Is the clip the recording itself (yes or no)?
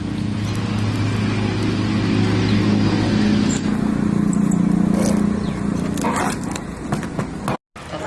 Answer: yes